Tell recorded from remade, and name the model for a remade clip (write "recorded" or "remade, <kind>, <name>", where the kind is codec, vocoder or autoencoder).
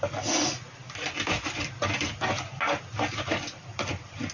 recorded